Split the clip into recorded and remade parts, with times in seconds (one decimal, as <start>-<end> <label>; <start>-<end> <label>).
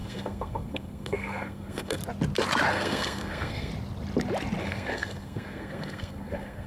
0.0-2.0 remade; 2.0-2.7 recorded; 2.7-3.7 remade; 3.7-4.6 recorded; 4.6-6.7 remade